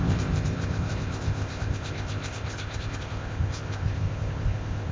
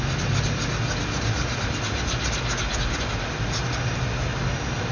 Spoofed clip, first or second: first